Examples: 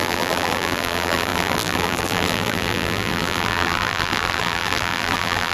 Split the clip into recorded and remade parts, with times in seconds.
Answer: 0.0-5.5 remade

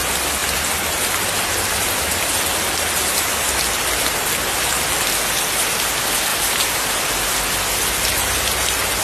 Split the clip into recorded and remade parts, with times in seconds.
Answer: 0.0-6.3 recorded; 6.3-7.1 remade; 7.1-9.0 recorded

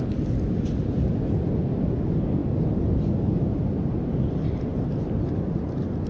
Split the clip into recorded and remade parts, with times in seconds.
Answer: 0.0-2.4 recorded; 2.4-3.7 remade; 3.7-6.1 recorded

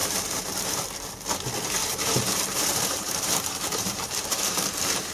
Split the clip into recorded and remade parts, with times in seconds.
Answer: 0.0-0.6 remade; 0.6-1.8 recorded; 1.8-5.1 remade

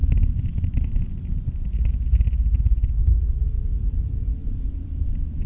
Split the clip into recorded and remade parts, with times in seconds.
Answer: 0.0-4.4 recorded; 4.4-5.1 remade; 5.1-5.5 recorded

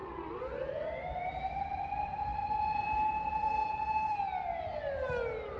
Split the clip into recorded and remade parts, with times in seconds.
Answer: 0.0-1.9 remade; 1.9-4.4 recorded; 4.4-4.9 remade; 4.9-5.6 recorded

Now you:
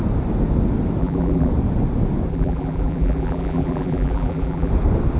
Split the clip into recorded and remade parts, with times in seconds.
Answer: 0.0-1.0 recorded; 1.0-1.5 remade; 1.5-2.3 recorded; 2.3-4.7 remade; 4.7-5.2 recorded